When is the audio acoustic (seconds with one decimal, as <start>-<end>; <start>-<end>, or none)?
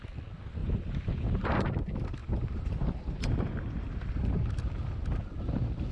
0.0-0.6; 1.7-2.2; 4.1-5.9